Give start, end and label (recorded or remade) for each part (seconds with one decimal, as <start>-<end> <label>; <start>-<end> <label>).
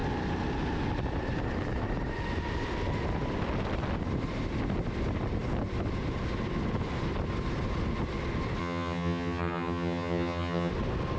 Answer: 0.0-8.6 recorded; 8.6-10.7 remade; 10.7-11.2 recorded